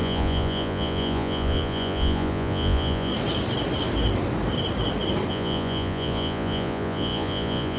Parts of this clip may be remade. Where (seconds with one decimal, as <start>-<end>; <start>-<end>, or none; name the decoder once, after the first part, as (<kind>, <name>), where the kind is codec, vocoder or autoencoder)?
0.0-3.1 (vocoder, Vocos); 5.3-7.8